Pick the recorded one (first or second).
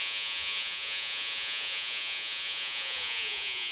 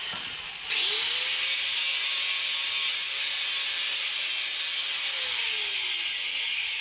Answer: second